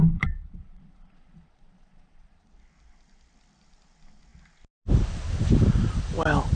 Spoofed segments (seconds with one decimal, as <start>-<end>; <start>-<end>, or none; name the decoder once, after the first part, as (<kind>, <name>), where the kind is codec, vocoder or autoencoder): 0.0-2.5 (vocoder, Vocos)